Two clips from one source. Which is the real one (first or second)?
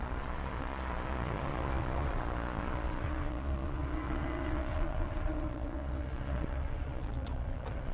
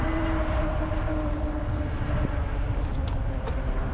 second